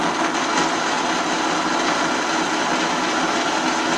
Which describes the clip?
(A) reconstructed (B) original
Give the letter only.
B